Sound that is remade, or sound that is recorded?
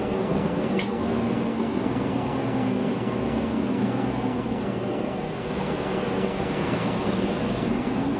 remade